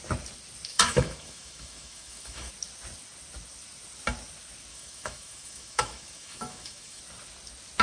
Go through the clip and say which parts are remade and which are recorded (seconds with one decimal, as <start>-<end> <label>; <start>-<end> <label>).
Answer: 0.0-0.7 recorded; 0.7-2.5 remade; 2.5-4.7 recorded; 4.7-7.0 remade; 7.0-7.8 recorded